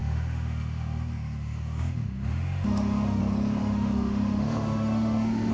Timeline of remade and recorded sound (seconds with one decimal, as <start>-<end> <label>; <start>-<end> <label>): 0.0-3.2 remade; 3.2-3.6 recorded; 3.6-5.5 remade